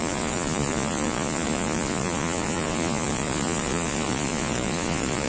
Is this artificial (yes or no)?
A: yes